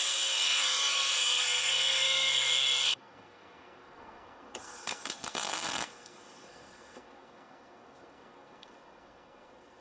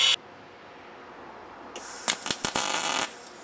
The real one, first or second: second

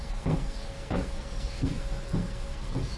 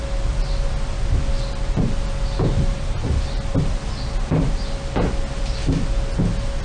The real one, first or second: second